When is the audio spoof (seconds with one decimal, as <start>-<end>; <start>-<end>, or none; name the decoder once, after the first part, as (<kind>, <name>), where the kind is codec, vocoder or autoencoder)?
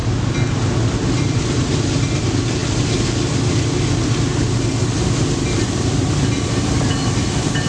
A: 1.1-2.6 (vocoder, BigVGAN v2); 7.2-7.7